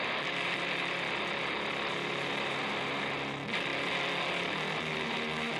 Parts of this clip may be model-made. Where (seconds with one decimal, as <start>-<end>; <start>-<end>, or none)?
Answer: 0.0-3.7; 4.3-5.6